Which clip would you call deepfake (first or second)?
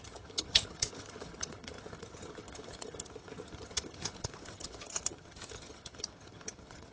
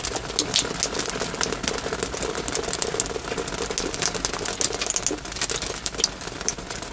first